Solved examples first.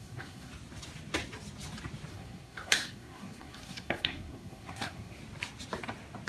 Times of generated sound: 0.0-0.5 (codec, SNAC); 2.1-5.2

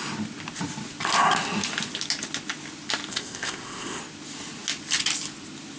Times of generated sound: 3.1-4.0 (codec, ZipCodec)

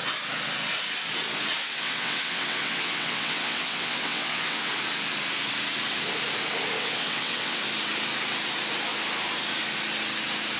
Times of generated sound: 1.6-4.7 (vocoder, WaveNeXt); 6.8-7.6

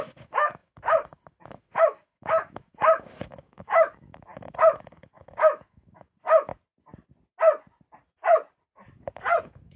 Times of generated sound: 0.0-6.5 (autoencoder, DAC-VAE); 9.4-9.8

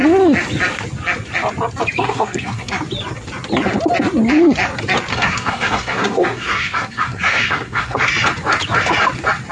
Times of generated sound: 2.0-2.7 (codec, SNAC); 5.1-8.1